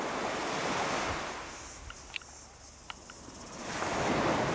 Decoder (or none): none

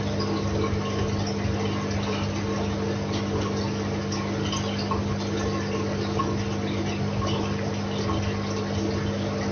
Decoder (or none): none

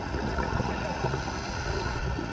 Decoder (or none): vocoder, Vocos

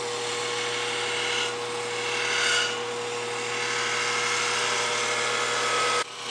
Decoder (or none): none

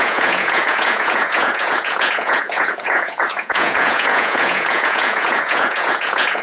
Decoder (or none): vocoder, Vocos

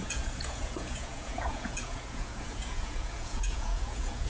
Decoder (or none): vocoder, Vocos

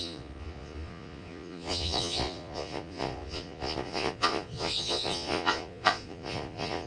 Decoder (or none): vocoder, Vocos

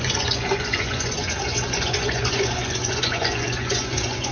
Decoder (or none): vocoder, Vocos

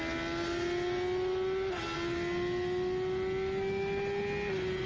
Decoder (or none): none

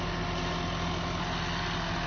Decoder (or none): none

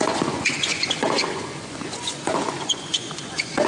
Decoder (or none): vocoder, Vocos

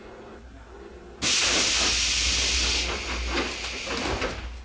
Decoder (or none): none